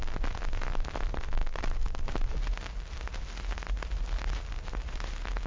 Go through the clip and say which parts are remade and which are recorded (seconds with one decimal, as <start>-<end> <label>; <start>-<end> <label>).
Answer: 0.0-5.5 recorded